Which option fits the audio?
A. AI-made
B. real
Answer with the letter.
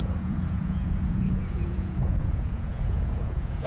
A